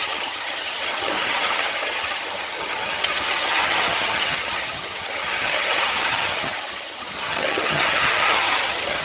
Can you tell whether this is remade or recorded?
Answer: remade